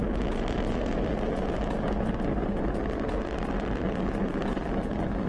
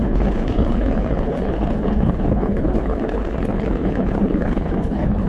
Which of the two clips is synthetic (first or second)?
second